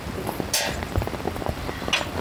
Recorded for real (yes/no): yes